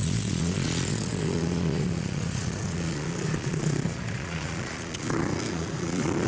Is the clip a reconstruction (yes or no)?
yes